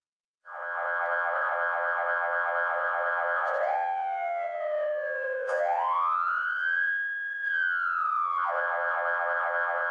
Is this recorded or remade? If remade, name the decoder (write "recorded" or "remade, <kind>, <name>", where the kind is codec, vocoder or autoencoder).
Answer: remade, vocoder, WaveNeXt